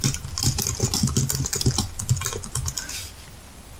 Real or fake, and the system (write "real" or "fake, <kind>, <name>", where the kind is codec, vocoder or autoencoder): real